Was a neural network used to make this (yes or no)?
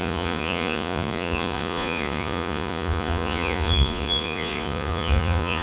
yes